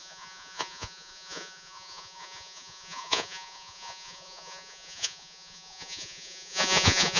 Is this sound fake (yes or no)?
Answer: yes